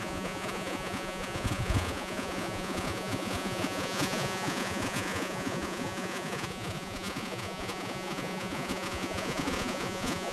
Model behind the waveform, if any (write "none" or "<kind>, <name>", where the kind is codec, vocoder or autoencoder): vocoder, Vocos